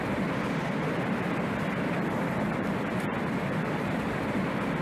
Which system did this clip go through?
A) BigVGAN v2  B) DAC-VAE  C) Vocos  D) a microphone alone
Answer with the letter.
A